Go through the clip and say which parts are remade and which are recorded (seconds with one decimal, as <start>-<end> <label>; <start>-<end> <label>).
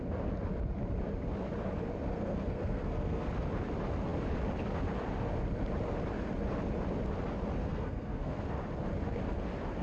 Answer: 0.0-2.1 recorded; 2.1-3.3 remade; 3.3-7.6 recorded; 7.6-8.4 remade; 8.4-9.8 recorded